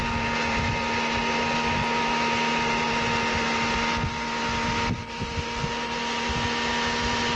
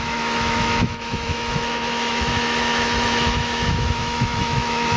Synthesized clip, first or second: second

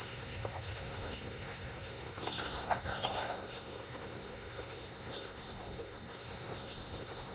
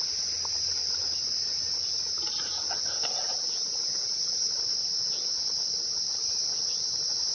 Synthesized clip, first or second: first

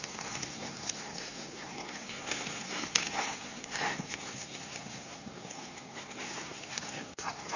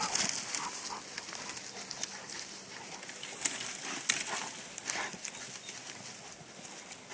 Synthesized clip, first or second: first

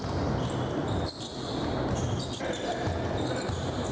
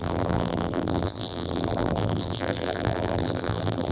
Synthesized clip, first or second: second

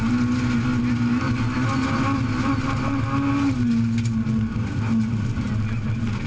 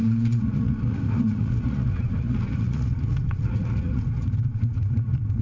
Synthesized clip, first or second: second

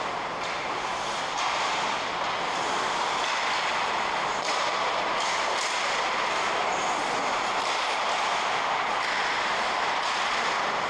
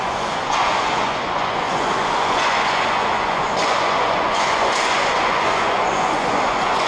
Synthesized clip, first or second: second